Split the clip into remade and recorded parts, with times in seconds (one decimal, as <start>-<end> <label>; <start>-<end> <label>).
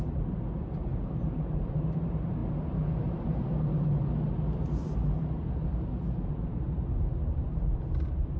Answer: 0.0-8.4 remade